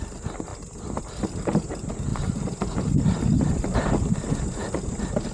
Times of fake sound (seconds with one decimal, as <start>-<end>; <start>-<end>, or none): none